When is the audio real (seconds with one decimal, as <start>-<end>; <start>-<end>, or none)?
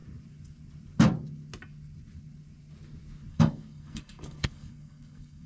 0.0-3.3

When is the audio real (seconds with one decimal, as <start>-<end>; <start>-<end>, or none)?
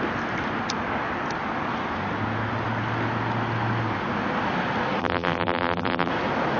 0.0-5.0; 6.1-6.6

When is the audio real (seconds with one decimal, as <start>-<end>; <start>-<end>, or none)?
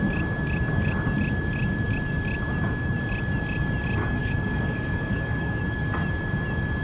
0.0-4.2; 5.6-6.8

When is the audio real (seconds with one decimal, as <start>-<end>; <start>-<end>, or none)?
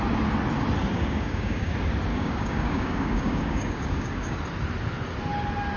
0.0-0.9; 1.7-2.1; 4.4-5.8